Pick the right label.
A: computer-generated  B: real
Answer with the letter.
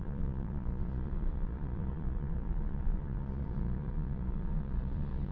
A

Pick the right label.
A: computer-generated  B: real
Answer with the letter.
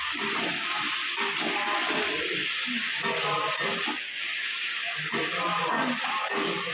B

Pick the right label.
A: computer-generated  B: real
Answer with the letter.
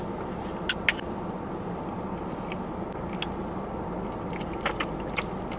B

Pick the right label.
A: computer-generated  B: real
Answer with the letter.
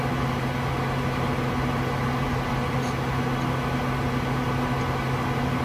B